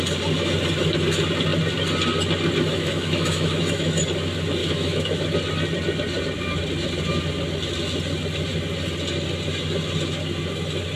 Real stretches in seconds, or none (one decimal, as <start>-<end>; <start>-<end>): 0.0-2.7; 4.0-4.6; 5.2-11.0